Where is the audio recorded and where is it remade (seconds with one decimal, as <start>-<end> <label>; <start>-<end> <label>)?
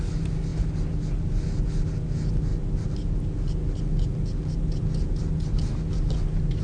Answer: 0.0-6.6 recorded